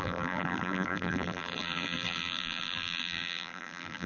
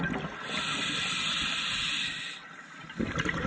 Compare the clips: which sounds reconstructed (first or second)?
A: first